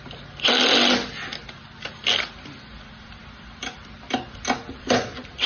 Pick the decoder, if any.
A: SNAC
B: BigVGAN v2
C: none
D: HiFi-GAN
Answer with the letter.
C